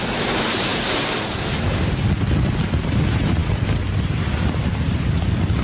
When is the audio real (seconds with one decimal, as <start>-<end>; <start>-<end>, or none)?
0.0-5.6